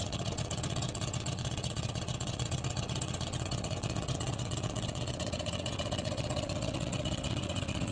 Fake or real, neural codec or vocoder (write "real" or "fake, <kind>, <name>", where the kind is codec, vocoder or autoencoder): fake, vocoder, WaveNeXt